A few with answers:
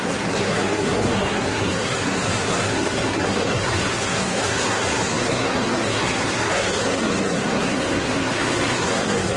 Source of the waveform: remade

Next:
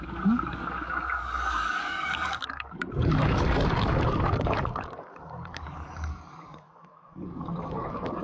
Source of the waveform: remade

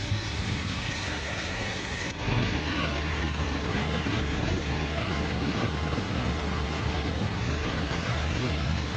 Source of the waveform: remade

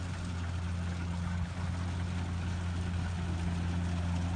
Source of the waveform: recorded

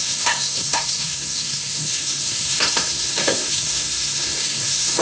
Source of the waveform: remade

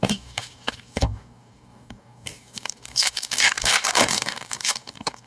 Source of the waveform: remade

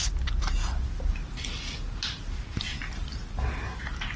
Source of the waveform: recorded